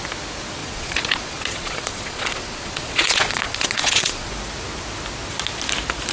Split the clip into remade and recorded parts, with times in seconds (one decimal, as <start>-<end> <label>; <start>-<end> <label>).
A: 0.0-0.6 recorded; 0.6-4.3 remade; 4.3-6.1 recorded